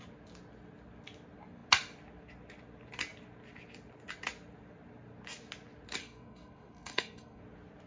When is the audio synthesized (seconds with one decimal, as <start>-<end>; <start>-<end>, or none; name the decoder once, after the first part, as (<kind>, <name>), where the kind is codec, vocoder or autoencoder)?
6.0-7.4 (codec, SNAC)